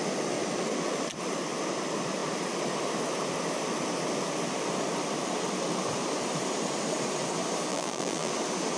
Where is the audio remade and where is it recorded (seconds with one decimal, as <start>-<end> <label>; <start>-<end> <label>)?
0.0-7.7 recorded; 7.7-8.3 remade; 8.3-8.8 recorded